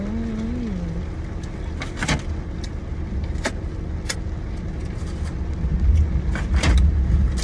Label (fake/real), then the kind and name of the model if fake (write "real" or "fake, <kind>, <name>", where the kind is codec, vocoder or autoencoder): real